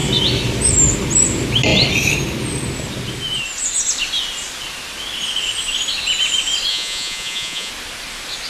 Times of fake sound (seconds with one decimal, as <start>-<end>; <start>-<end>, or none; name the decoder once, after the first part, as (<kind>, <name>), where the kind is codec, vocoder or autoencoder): 6.7-7.7 (vocoder, Vocos)